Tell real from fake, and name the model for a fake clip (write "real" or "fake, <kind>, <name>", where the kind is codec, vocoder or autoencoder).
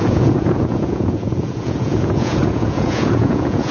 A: fake, vocoder, Vocos